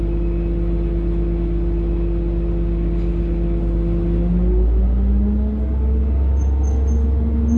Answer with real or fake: real